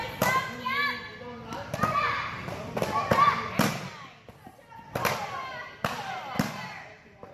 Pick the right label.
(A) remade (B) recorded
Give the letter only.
B